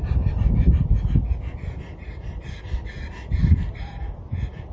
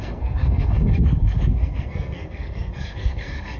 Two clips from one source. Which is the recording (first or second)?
first